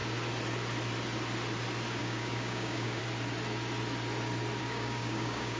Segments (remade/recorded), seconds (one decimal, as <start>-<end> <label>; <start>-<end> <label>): 0.0-2.0 recorded; 2.0-3.0 remade; 3.0-4.6 recorded; 4.6-5.6 remade